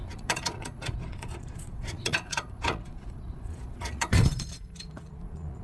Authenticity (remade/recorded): remade